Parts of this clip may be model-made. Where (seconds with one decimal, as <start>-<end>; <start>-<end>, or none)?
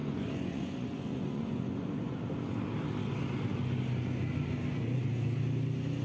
0.0-2.2